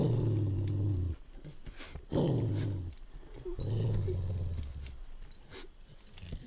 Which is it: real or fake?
real